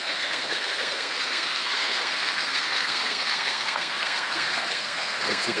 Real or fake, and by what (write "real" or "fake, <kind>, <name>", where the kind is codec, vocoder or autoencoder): fake, codec, SNAC